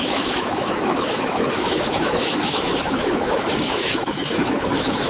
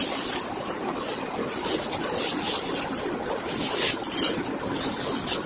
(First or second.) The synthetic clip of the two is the first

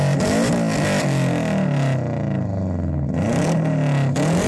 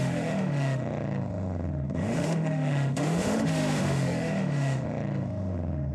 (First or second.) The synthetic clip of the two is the second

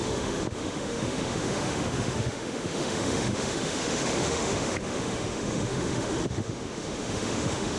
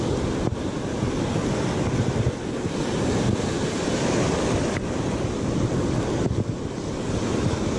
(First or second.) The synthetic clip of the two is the first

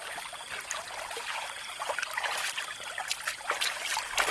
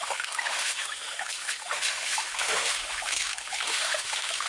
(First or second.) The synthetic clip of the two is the second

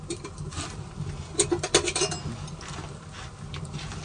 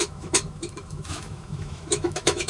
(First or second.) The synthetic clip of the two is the second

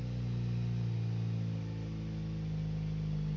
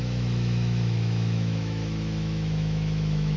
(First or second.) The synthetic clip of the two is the second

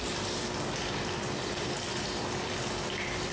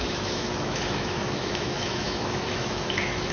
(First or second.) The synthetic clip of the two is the second